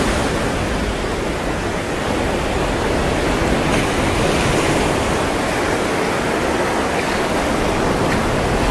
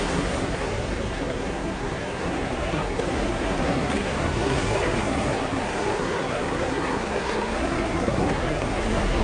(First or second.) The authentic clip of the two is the first